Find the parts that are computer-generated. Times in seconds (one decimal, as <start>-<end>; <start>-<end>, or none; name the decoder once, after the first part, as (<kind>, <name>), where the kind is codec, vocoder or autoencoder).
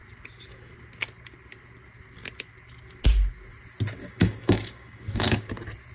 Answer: 4.0-5.5 (codec, DAC)